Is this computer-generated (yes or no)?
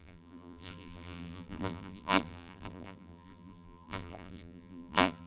yes